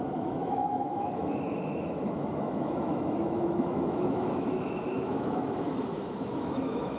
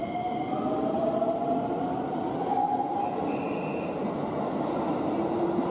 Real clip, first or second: second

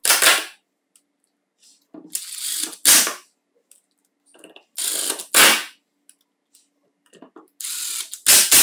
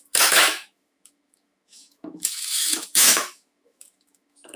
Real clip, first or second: first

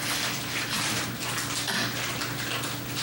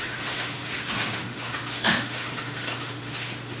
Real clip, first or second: first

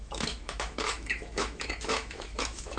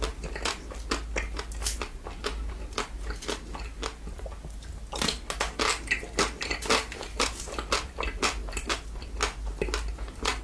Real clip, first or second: second